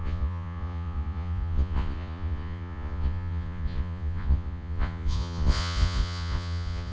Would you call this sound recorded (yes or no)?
no